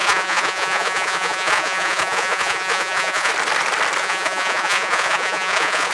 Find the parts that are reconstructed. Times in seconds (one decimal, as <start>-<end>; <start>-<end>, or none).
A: 0.0-3.3; 4.0-5.9